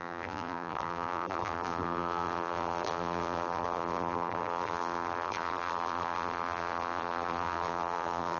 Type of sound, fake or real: fake